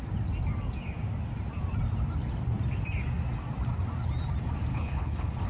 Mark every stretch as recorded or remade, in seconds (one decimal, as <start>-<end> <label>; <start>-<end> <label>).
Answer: 0.0-4.7 recorded; 4.7-5.5 remade